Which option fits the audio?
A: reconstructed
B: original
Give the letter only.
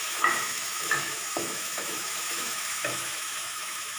A